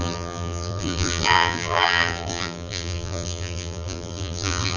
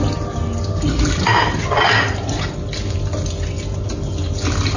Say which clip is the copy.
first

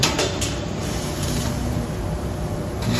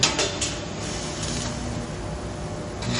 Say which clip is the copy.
first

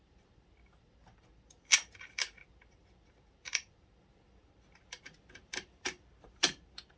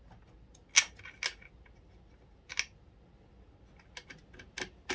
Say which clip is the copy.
first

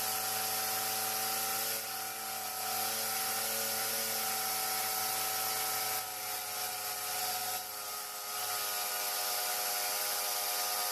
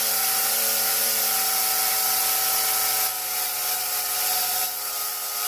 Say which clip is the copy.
second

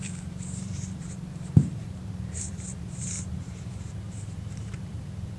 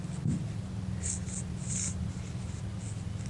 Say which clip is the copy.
first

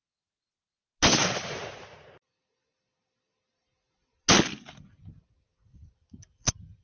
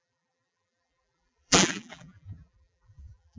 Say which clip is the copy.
second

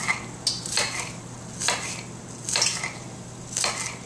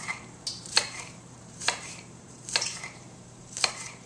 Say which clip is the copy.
second